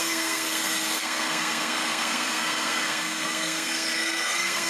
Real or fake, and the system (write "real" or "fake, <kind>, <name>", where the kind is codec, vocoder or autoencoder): fake, codec, SNAC